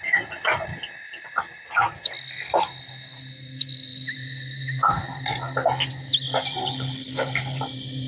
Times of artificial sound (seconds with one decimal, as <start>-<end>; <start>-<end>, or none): 6.6-7.6